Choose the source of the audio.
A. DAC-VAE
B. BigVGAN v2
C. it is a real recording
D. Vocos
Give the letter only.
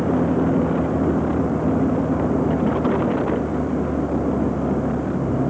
C